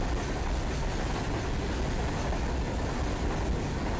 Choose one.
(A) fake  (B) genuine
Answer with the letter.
B